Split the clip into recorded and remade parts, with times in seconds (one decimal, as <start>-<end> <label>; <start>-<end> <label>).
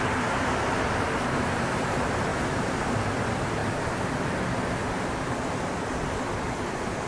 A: 0.0-7.1 recorded